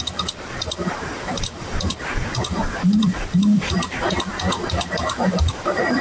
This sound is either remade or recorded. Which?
remade